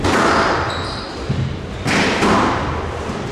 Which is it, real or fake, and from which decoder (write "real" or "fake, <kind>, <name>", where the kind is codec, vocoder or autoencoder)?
real